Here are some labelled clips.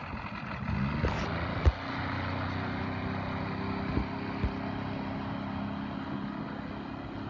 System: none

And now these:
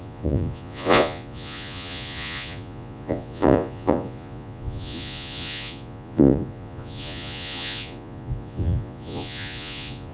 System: vocoder, Vocos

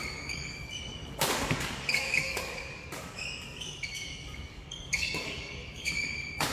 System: codec, DAC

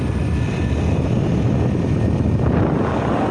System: none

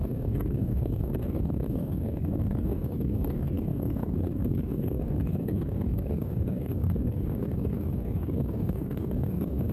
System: codec, DAC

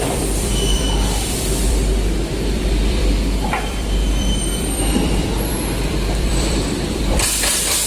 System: vocoder, BigVGAN v2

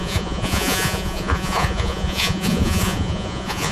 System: vocoder, Vocos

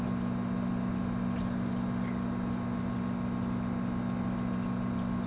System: none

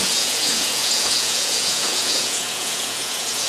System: vocoder, Vocos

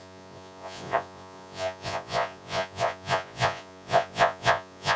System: vocoder, Vocos